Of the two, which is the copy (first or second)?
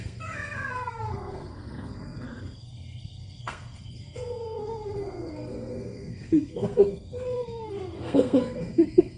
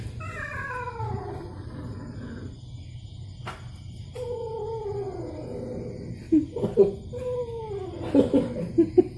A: first